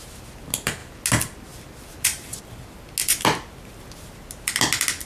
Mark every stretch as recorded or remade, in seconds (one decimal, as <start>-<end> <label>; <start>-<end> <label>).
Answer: 0.0-5.1 recorded